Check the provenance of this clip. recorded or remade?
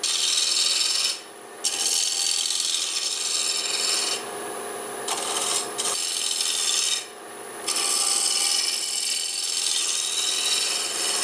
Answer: recorded